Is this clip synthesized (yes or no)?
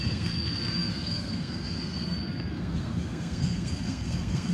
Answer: yes